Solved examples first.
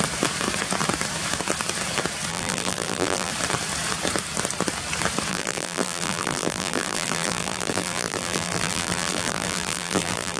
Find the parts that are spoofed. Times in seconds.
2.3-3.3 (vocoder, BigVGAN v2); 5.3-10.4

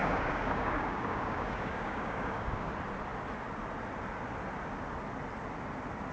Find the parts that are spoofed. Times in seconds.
0.0-2.7 (codec, DAC)

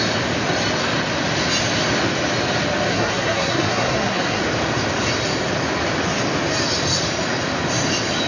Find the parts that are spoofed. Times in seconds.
2.9-4.4 (codec, SNAC)